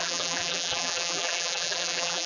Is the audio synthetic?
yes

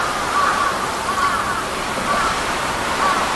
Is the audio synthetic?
no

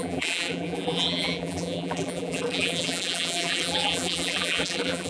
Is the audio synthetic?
yes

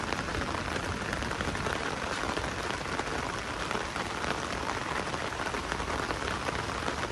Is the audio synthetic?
yes